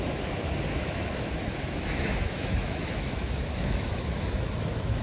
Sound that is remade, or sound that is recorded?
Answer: remade